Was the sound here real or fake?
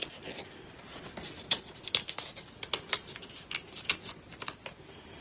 real